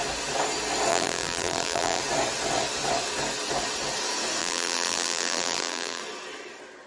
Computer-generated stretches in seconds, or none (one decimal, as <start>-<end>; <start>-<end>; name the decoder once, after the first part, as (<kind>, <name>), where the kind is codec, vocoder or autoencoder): 0.9-2.0 (vocoder, BigVGAN v2); 4.4-6.0